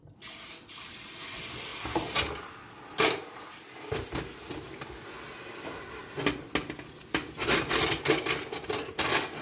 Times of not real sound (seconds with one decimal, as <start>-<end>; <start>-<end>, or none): none